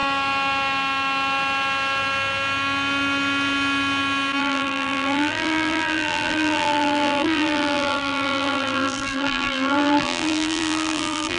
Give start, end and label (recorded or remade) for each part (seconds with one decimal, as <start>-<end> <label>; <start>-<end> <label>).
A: 0.0-4.4 recorded; 4.4-11.4 remade